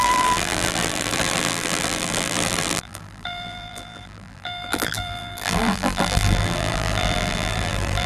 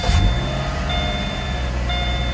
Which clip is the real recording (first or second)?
second